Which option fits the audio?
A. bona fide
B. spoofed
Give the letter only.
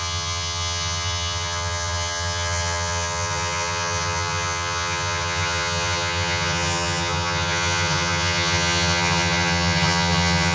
B